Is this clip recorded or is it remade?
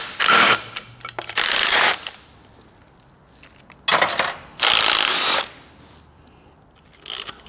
recorded